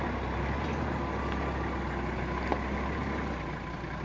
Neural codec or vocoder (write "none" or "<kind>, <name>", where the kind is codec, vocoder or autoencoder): none